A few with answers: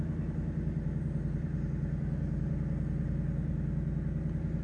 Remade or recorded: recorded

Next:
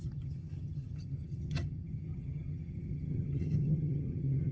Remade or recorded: remade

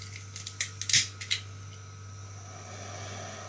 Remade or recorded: recorded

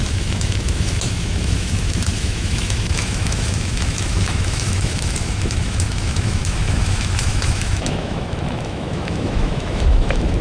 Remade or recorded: remade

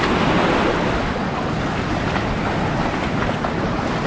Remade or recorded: recorded